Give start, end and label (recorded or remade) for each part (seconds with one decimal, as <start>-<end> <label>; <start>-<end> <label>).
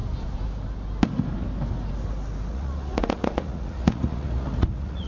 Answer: 0.0-2.5 recorded; 2.5-5.1 remade